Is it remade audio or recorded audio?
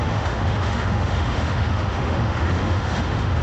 remade